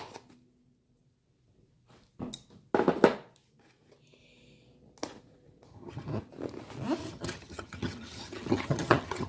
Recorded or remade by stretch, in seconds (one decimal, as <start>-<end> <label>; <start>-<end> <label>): 0.0-5.7 recorded; 5.7-6.2 remade; 6.2-7.0 recorded; 7.0-9.3 remade